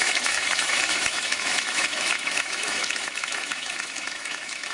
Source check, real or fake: fake